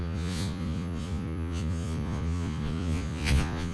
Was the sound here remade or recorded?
remade